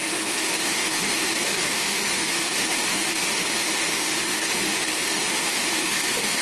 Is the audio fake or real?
fake